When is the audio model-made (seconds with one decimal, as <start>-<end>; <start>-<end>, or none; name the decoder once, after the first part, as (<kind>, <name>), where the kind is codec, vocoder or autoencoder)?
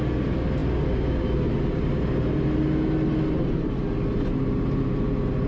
none